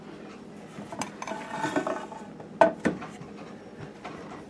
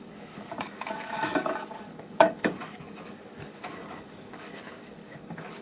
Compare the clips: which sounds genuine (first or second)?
first